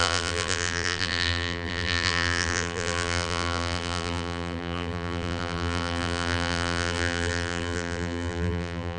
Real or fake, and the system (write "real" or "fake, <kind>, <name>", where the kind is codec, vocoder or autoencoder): fake, vocoder, BigVGAN v2